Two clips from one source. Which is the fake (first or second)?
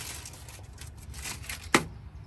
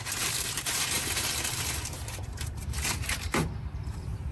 second